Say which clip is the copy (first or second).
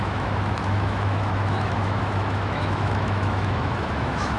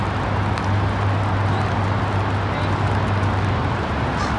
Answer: first